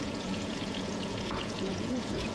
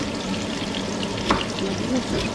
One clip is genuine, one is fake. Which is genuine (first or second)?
second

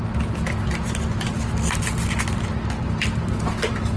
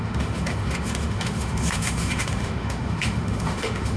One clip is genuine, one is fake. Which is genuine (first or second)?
first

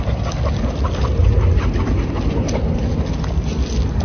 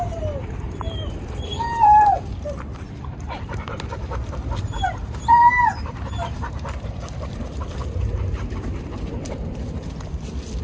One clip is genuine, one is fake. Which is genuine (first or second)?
first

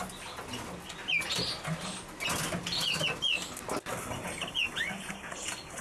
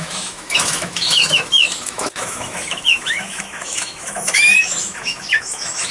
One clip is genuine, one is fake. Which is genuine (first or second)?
first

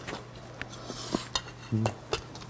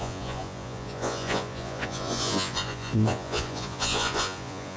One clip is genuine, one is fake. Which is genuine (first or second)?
first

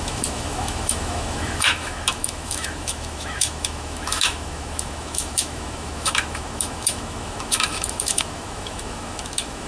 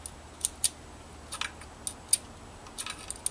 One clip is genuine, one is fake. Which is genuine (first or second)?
second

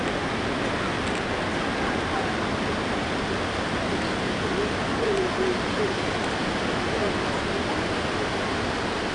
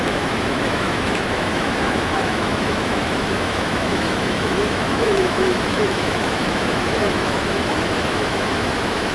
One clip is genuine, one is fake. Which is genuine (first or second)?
first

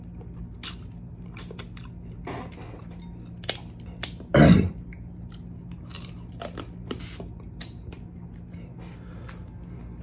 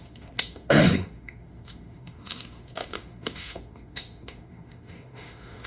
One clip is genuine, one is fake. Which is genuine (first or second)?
first